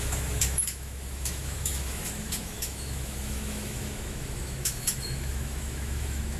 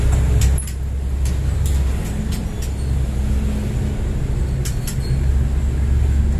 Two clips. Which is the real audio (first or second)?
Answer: second